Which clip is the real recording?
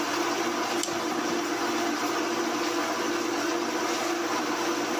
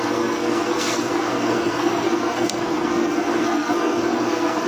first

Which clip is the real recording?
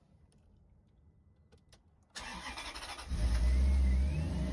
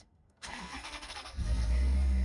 first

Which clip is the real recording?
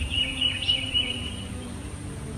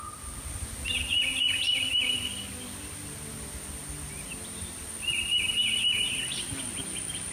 second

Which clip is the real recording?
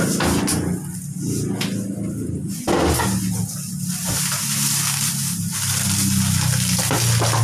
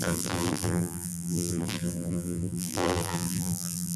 first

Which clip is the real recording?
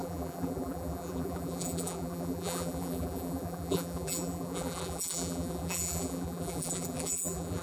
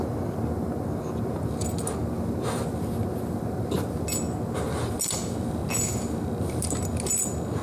second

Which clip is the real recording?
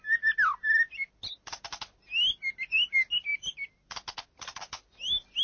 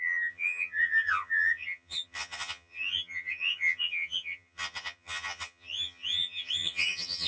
first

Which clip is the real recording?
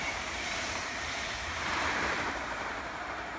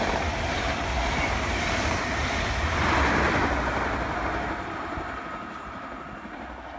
second